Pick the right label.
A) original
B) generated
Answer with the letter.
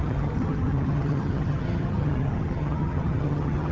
B